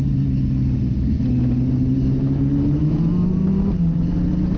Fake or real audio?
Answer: real